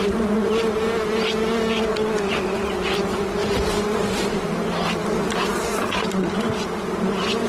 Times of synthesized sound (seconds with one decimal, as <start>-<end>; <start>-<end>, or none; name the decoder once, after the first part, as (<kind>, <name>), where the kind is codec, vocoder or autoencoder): 3.4-4.5 (vocoder, BigVGAN v2)

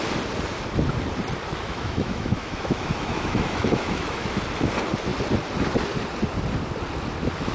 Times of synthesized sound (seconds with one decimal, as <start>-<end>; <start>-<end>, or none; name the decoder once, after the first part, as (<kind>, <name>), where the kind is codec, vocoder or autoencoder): 1.5-4.4 (autoencoder, DAC-VAE)